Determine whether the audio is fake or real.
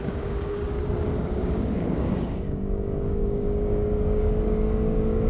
fake